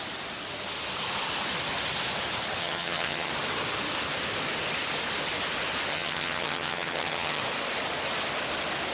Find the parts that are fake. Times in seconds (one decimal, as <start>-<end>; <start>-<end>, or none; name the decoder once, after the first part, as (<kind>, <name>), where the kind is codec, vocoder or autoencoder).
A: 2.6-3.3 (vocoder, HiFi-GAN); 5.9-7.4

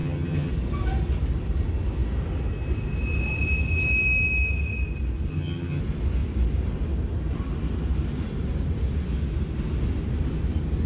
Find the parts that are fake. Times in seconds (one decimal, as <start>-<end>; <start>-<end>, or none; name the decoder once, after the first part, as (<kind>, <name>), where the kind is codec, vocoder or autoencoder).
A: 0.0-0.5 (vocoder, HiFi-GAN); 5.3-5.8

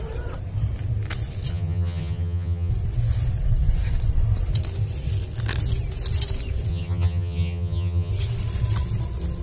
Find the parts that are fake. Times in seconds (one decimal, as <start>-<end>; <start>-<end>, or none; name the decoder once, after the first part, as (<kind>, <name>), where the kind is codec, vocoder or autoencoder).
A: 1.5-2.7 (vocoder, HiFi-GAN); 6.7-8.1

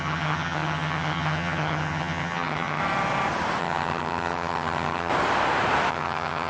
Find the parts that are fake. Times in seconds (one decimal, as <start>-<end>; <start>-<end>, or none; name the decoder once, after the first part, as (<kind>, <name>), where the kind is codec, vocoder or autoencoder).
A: 0.0-2.8 (vocoder, HiFi-GAN); 3.6-5.1; 5.9-6.5